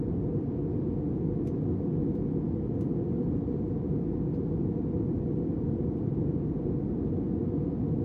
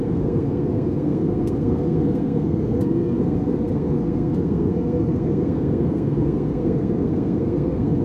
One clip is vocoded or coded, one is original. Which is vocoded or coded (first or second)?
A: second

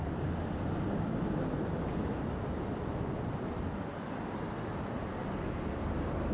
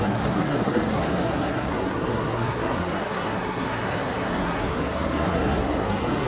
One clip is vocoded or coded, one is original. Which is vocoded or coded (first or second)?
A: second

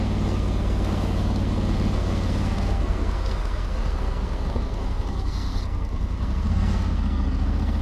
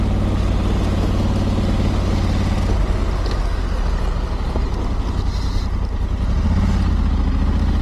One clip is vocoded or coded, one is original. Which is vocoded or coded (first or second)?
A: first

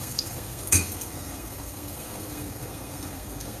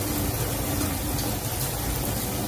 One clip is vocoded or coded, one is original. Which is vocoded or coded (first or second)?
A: first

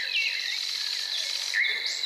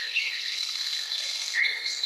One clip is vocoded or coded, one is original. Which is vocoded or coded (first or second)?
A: second